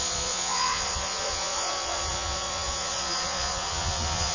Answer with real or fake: fake